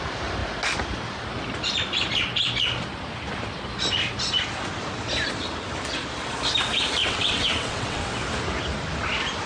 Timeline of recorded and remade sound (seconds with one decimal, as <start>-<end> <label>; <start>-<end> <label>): 0.0-7.0 recorded; 7.0-8.0 remade; 8.0-9.5 recorded